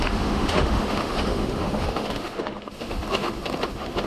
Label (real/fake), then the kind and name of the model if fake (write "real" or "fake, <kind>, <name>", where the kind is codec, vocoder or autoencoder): fake, autoencoder, DAC-VAE